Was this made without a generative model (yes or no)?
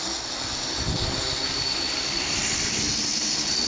no